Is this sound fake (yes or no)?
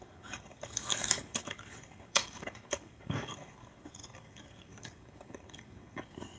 yes